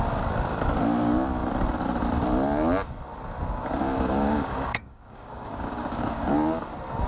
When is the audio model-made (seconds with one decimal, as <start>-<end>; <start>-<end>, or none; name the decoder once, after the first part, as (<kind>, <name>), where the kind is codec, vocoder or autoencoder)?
3.8-6.3 (codec, DAC)